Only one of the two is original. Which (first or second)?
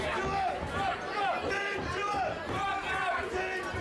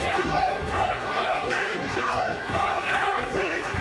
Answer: first